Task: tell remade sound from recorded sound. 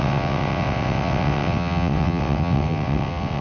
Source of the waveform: remade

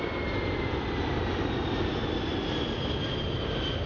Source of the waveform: recorded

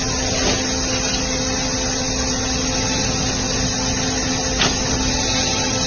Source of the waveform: recorded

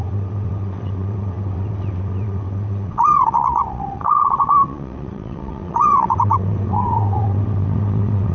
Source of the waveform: remade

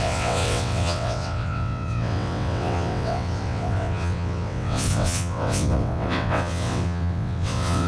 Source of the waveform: remade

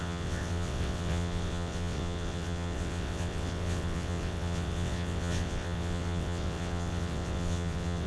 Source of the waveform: remade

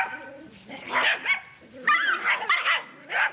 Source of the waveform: recorded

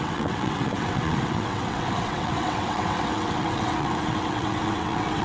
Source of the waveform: remade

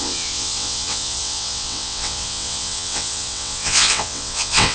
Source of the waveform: remade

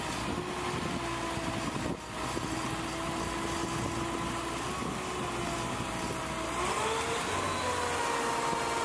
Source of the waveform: recorded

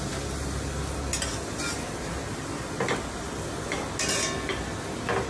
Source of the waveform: recorded